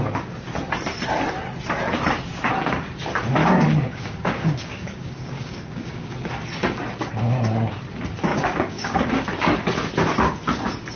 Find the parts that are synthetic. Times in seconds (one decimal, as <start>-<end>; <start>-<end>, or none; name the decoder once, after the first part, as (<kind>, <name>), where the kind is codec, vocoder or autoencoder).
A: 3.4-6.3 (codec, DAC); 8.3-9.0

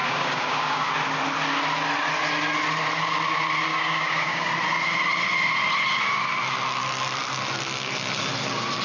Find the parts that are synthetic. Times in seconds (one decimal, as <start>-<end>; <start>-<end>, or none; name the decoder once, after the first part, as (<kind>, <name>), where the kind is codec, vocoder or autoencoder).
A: 0.0-0.9 (codec, DAC); 3.7-4.5

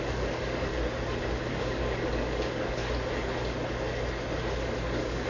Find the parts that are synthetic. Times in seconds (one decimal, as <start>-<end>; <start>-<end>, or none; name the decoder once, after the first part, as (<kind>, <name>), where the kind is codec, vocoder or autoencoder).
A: 0.0-0.7 (codec, DAC); 1.4-2.8; 4.6-5.3